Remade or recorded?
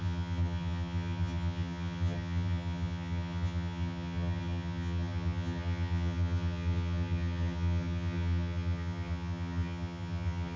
remade